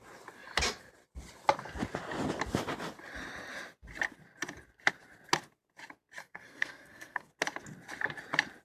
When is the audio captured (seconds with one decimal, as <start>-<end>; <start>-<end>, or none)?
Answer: 0.0-6.2; 7.3-8.6